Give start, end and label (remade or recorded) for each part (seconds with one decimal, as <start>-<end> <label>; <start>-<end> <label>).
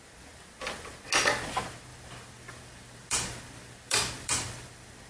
0.0-1.9 recorded; 1.9-5.1 remade